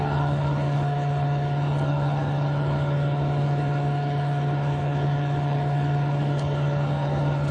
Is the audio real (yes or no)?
no